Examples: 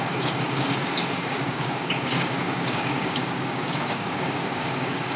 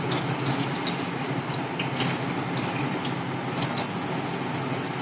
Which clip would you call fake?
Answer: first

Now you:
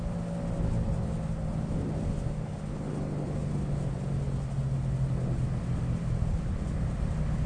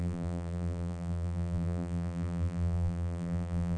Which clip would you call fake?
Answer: second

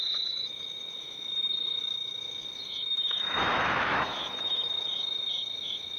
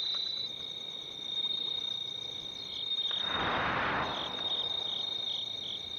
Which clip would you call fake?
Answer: first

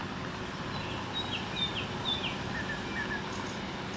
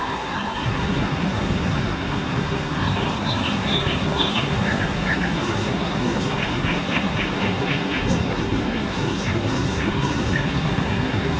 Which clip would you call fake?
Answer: second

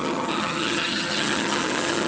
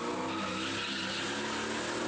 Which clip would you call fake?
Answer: first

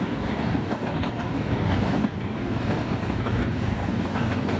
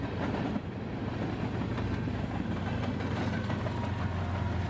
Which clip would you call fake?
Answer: first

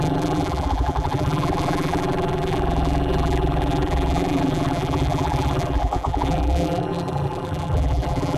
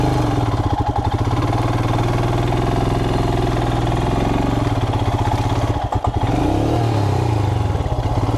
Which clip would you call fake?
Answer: first